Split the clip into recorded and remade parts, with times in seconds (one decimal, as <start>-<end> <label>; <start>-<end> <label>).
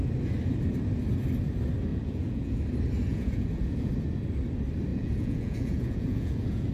0.0-1.9 recorded; 1.9-2.6 remade; 2.6-3.1 recorded; 3.1-3.9 remade; 3.9-4.9 recorded; 4.9-6.7 remade